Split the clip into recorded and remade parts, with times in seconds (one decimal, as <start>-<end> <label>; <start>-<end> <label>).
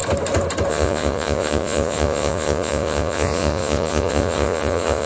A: 0.0-0.7 recorded; 0.7-5.1 remade